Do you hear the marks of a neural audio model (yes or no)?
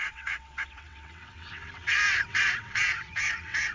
yes